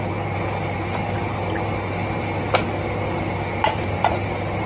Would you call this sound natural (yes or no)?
yes